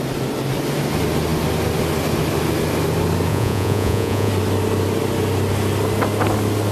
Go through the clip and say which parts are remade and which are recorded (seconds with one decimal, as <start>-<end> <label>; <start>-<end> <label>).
0.0-3.3 recorded; 3.3-4.3 remade; 4.3-6.7 recorded